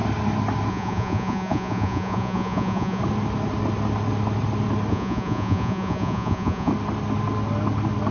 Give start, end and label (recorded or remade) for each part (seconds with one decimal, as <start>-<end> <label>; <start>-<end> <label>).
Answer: 0.0-0.7 recorded; 0.7-3.0 remade; 3.0-4.9 recorded; 4.9-6.7 remade; 6.7-8.1 recorded